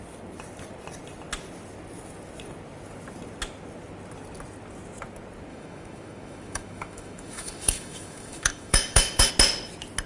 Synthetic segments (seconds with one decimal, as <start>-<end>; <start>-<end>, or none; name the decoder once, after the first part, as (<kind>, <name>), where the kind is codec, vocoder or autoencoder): 5.5-9.3 (autoencoder, DAC-VAE)